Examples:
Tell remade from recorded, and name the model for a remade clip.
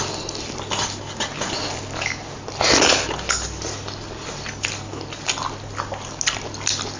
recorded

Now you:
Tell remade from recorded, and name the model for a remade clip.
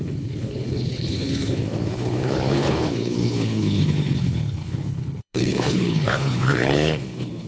remade, codec, HILCodec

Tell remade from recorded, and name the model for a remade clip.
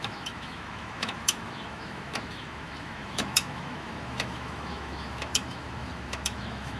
remade, autoencoder, DAC-VAE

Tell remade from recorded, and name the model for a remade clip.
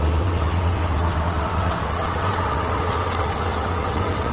remade, vocoder, WaveNeXt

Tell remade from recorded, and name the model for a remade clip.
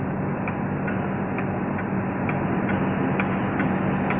recorded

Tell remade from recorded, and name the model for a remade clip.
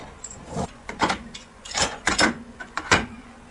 remade, vocoder, Vocos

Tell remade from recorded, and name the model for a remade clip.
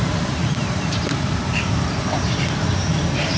remade, vocoder, BigVGAN v2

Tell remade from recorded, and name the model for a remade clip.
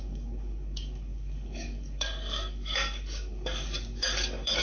remade, codec, DAC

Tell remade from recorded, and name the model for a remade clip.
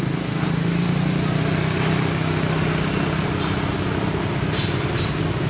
recorded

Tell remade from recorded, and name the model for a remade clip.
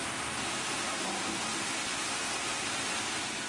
recorded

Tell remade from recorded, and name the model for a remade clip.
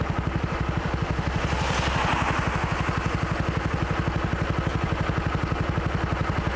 recorded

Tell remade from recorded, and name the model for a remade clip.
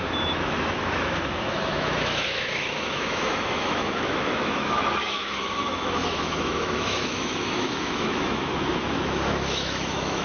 remade, autoencoder, DAC-VAE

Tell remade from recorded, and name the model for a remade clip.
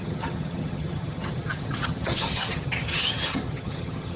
remade, vocoder, HiFi-GAN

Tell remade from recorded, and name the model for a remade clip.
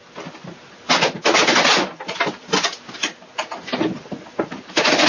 recorded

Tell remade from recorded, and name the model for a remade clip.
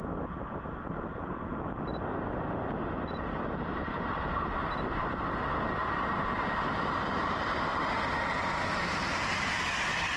recorded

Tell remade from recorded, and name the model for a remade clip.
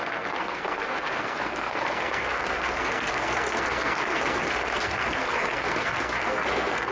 remade, codec, SNAC